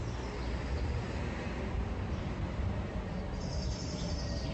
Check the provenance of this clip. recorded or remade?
recorded